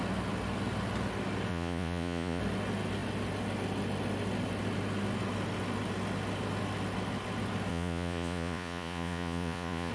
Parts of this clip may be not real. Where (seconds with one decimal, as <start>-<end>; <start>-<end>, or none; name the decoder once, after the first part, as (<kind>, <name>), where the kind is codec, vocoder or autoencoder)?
1.5-2.4 (vocoder, Vocos); 7.7-9.9